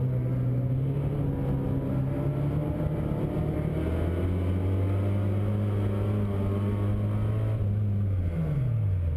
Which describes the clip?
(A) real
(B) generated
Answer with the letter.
A